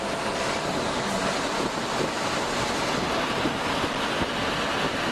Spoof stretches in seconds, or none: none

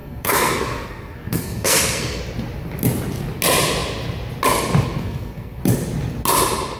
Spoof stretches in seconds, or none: 0.0-2.2 (codec, SNAC); 5.0-5.6

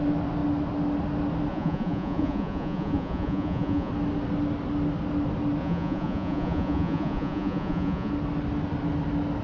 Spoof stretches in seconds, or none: 1.5-3.9 (vocoder, Vocos); 5.6-8.1

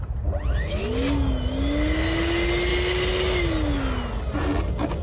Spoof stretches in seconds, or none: none

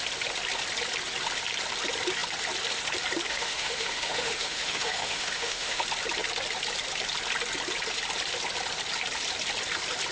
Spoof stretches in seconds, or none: 3.3-5.8 (autoencoder, DAC-VAE)

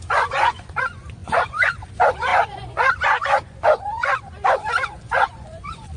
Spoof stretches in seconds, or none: 0.0-6.0 (vocoder, Vocos)

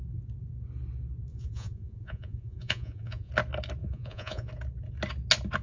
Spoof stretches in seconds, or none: 1.3-3.3 (vocoder, Vocos); 3.8-4.5